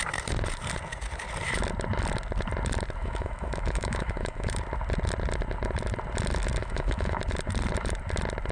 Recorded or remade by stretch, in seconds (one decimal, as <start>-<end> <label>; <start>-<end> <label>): 0.0-3.0 recorded; 3.0-4.6 remade; 4.6-6.6 recorded; 6.6-7.2 remade; 7.2-8.5 recorded